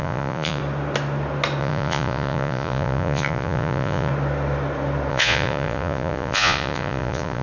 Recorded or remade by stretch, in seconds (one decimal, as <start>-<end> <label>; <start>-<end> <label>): 0.0-0.6 remade; 0.6-1.6 recorded; 1.6-4.1 remade; 4.1-5.1 recorded; 5.1-7.4 remade